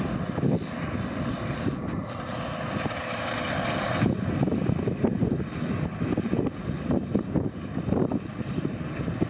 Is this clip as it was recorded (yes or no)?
yes